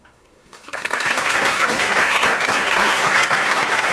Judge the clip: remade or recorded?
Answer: remade